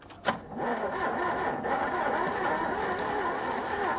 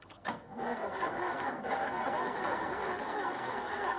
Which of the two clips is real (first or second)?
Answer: first